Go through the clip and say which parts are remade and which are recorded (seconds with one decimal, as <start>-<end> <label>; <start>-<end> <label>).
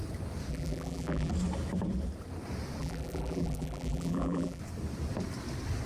0.0-0.5 recorded; 0.5-1.3 remade; 1.3-2.8 recorded; 2.8-4.6 remade; 4.6-5.9 recorded